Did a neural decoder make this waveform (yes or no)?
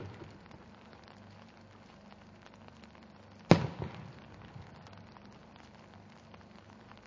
no